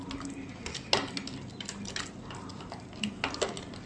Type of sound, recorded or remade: recorded